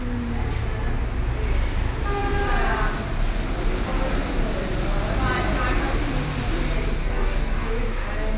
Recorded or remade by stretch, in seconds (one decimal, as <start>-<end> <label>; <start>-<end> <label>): 0.0-7.0 recorded; 7.0-7.7 remade; 7.7-8.4 recorded